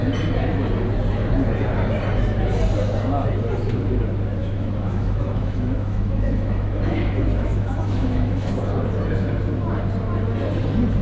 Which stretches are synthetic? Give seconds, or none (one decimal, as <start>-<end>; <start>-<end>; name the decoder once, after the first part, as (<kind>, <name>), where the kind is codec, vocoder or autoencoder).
4.4-8.6 (autoencoder, DAC-VAE)